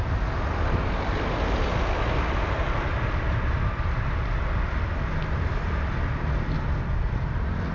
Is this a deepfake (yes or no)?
no